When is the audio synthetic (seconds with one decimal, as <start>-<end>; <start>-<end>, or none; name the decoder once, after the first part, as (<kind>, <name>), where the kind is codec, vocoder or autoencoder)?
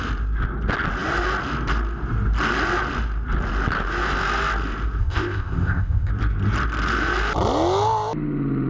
5.0-6.1 (codec, ZipCodec)